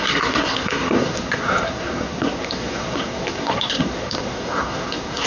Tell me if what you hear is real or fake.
fake